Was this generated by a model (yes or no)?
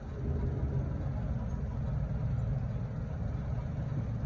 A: no